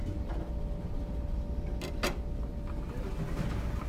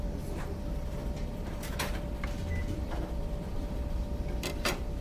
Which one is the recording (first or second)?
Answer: first